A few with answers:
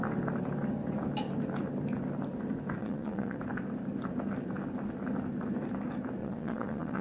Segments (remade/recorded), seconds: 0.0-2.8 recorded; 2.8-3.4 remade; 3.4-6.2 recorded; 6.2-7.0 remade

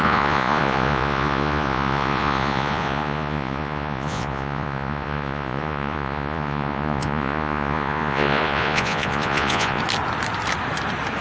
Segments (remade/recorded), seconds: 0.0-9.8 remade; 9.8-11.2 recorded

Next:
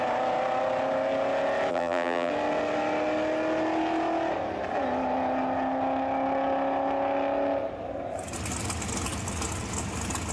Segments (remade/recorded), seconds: 0.0-1.7 recorded; 1.7-2.3 remade; 2.3-10.3 recorded

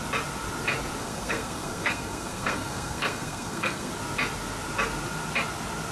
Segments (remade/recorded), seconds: 0.0-1.0 recorded; 1.0-3.9 remade; 3.9-5.9 recorded

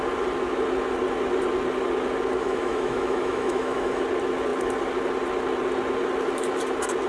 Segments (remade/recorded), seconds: 0.0-2.4 recorded; 2.4-4.0 remade; 4.0-7.1 recorded

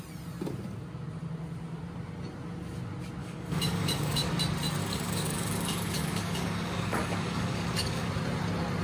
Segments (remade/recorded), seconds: 0.0-3.2 recorded; 3.2-4.3 remade; 4.3-4.8 recorded; 4.8-8.1 remade; 8.1-8.8 recorded

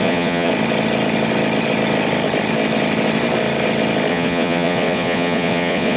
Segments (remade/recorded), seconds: 0.0-0.5 remade; 0.5-4.1 recorded; 4.1-6.0 remade